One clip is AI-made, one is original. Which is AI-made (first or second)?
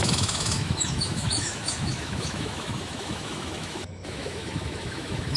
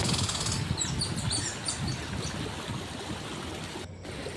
first